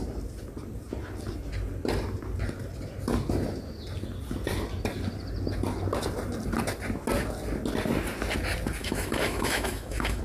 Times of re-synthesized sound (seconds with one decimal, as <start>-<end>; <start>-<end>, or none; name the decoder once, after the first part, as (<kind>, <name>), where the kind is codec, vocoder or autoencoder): 8.8-10.2 (autoencoder, DAC-VAE)